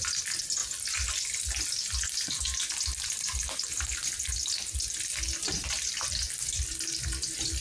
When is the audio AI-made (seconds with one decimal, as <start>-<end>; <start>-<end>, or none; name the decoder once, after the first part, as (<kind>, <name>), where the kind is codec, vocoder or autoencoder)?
none